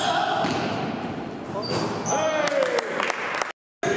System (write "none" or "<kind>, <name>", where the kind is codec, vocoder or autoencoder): none